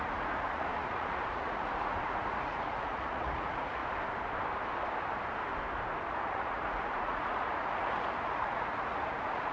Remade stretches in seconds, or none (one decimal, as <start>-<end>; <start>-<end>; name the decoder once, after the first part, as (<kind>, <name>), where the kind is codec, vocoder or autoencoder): 0.0-3.8 (vocoder, Vocos); 6.1-9.5